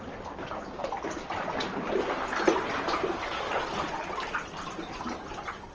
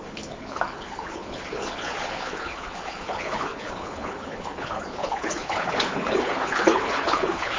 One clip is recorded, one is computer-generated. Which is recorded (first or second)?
first